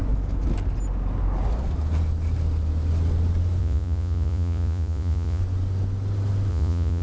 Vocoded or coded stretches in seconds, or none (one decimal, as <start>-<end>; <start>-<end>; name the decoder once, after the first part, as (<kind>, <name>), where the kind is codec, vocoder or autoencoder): 3.6-5.4 (vocoder, Vocos); 6.5-7.0